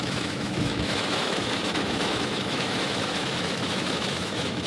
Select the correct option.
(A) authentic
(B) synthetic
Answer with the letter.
B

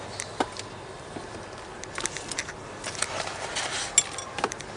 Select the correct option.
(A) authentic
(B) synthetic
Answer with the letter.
A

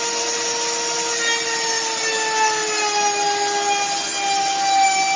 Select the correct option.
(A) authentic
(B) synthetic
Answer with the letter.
A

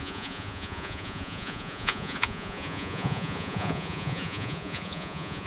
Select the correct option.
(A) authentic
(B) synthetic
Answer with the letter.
B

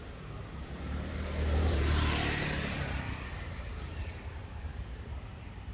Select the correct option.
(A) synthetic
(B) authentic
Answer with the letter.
A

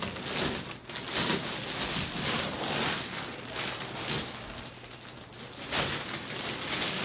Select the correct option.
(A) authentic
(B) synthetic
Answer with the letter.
A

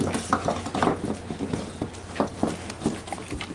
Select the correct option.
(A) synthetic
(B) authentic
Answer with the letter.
B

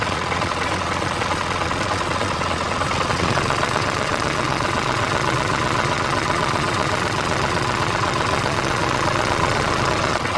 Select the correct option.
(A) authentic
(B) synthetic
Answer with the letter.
B